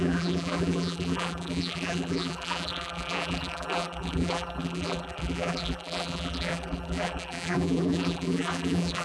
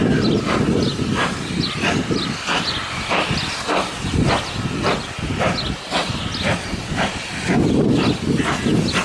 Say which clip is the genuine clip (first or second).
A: second